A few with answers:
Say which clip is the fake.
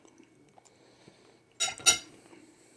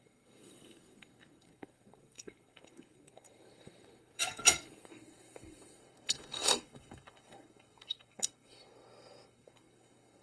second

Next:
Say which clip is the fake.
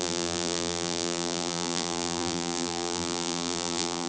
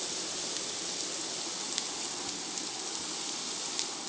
first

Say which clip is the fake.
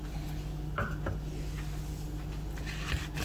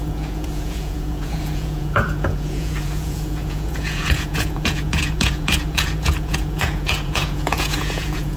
second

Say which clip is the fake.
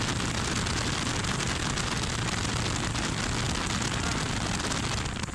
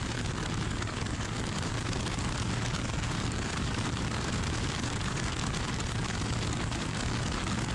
second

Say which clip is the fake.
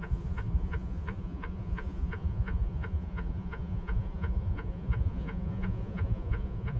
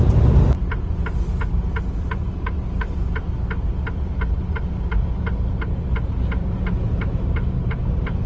first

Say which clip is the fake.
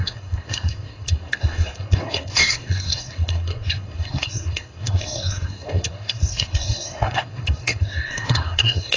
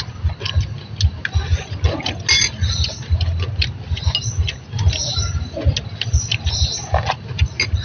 first